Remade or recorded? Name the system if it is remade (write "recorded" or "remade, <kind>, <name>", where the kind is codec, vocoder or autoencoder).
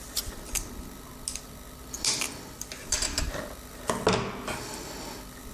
recorded